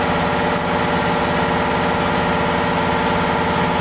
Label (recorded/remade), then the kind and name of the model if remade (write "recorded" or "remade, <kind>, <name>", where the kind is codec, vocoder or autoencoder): recorded